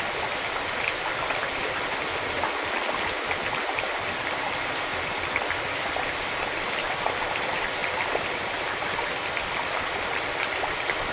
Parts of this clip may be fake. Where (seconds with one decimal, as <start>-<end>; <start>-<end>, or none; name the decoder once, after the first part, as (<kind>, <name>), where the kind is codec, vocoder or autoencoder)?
0.0-2.1 (vocoder, BigVGAN v2); 4.2-4.9; 5.6-11.1